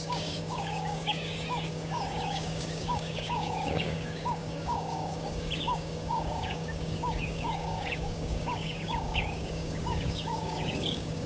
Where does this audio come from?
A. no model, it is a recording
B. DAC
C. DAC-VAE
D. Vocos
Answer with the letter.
B